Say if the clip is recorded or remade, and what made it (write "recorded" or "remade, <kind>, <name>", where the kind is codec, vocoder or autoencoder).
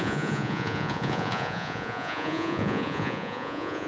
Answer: remade, vocoder, Vocos